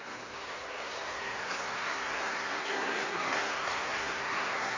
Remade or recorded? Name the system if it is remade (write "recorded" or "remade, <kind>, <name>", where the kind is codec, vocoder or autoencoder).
remade, codec, SNAC